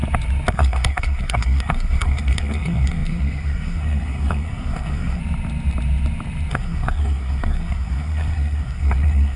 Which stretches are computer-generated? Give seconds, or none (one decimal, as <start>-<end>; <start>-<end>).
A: 0.5-5.2; 6.5-9.4